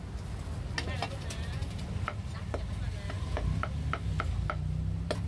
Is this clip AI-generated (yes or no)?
no